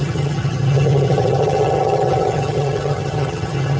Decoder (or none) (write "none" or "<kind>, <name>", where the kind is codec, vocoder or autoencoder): vocoder, HiFi-GAN